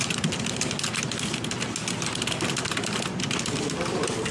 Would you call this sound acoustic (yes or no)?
yes